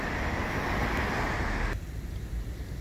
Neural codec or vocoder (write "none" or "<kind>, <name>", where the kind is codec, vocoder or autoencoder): none